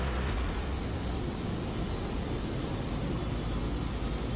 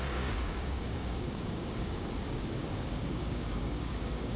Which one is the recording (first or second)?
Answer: first